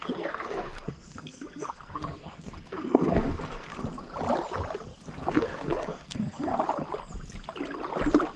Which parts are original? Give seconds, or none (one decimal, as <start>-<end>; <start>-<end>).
3.7-5.3; 6.5-8.4